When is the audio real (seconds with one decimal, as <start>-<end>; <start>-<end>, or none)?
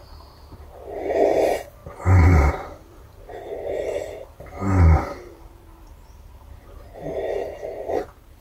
1.8-2.5